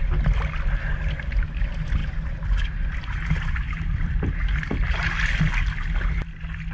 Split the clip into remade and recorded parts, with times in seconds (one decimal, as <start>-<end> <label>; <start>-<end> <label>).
0.0-6.7 recorded